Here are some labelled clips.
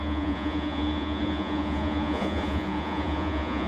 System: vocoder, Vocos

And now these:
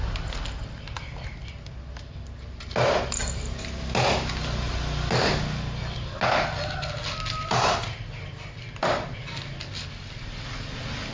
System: none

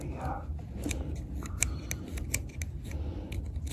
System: none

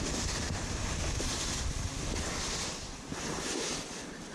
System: none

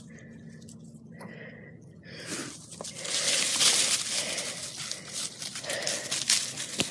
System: none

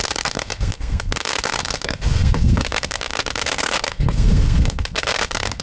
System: codec, SNAC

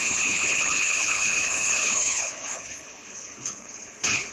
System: codec, HILCodec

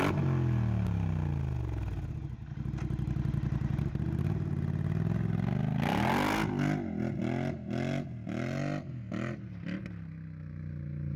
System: none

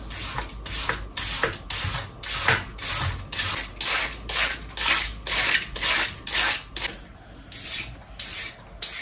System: none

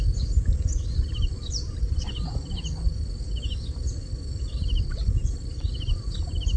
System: none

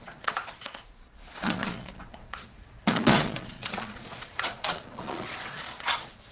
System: vocoder, Vocos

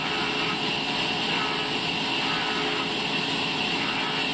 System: none